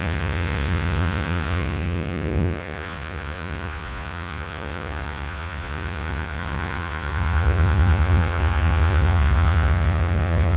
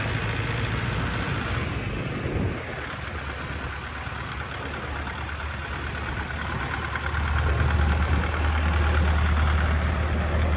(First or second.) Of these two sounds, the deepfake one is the first